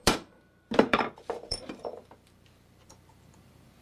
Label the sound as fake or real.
fake